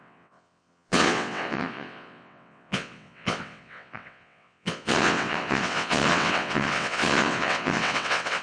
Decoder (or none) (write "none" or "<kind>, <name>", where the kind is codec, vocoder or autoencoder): vocoder, WaveNeXt